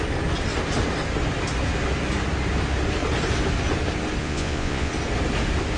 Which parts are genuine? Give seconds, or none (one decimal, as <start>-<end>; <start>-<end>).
0.0-4.2; 4.9-5.8